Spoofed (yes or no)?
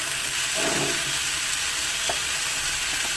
no